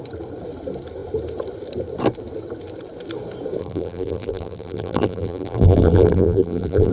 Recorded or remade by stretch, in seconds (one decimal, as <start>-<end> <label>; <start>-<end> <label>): 0.0-3.6 recorded; 3.6-6.9 remade